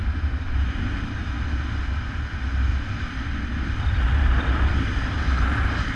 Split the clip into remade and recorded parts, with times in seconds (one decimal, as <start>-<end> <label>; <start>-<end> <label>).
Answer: 0.0-2.7 recorded; 2.7-5.1 remade; 5.1-6.0 recorded